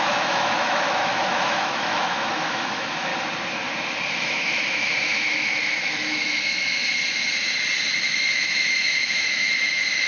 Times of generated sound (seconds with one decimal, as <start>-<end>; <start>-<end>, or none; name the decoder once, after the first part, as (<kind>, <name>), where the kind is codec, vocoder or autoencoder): 0.0-3.1 (autoencoder, DAC-VAE); 4.3-6.8; 8.0-10.1